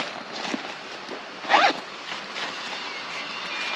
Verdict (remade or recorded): recorded